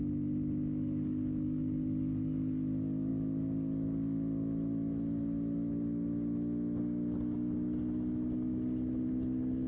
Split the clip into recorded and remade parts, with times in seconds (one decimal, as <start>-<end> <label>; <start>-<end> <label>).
0.0-9.7 recorded